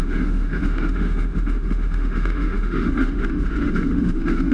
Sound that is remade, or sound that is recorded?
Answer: remade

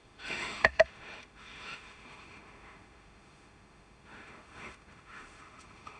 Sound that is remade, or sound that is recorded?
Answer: remade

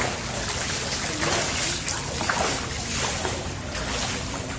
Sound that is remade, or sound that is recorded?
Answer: recorded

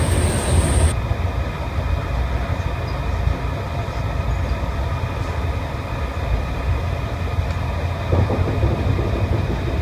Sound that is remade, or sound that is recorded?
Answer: recorded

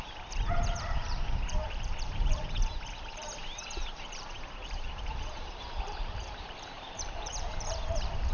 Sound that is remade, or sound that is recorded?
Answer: remade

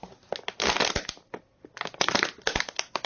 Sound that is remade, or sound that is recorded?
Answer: recorded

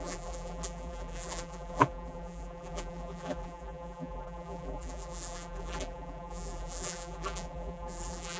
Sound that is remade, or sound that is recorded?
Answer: remade